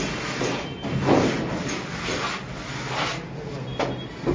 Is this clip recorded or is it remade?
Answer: recorded